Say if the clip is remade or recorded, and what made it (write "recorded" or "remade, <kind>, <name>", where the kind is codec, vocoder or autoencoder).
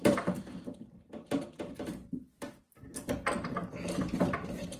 remade, vocoder, BigVGAN v2